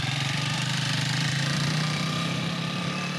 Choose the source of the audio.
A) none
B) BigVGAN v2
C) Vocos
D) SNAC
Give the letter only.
B